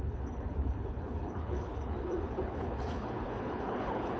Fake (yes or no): yes